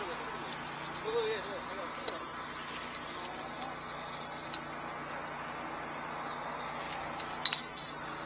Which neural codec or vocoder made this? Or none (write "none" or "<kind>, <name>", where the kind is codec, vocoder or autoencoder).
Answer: none